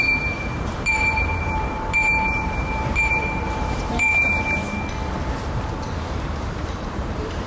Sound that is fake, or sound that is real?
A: fake